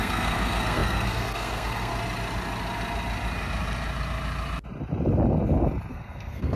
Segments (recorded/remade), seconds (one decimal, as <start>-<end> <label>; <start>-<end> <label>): 0.0-1.9 remade; 1.9-5.9 recorded; 5.9-6.6 remade